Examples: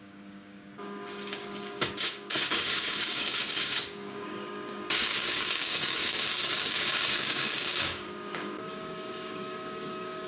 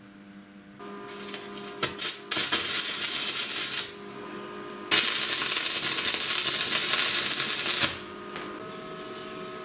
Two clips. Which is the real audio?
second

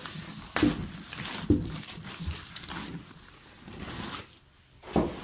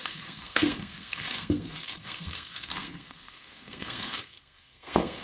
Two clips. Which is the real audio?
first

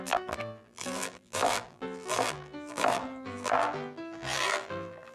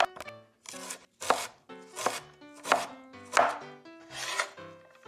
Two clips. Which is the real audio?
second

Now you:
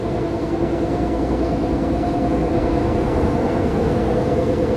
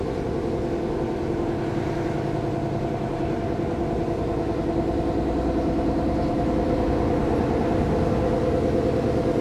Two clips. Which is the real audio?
second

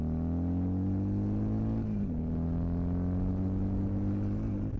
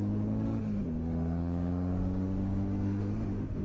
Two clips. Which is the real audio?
first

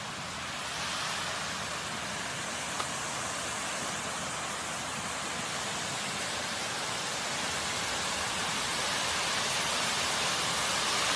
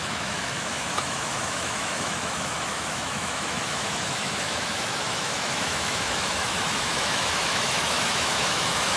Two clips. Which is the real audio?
first